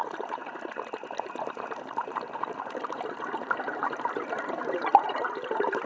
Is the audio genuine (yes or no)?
no